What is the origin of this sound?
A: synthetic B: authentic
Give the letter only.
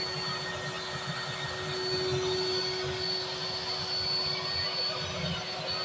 B